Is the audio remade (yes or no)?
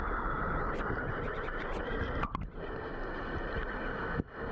no